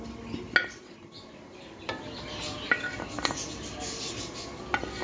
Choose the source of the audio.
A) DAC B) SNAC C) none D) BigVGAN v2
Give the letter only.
C